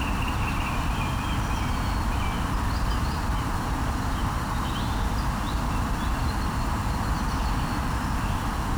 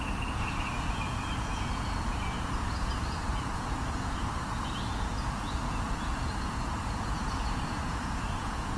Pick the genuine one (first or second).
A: first